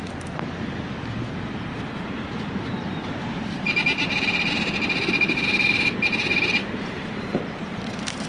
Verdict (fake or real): fake